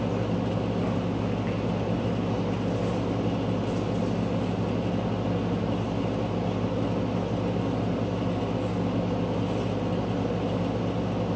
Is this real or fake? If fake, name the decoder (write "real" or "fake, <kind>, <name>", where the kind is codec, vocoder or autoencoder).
real